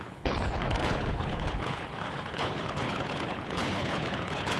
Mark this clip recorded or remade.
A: remade